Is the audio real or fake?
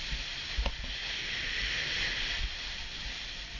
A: fake